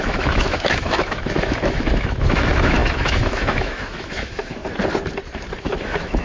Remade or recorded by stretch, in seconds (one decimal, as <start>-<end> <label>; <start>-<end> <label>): 0.0-4.6 remade; 4.6-5.6 recorded; 5.6-6.2 remade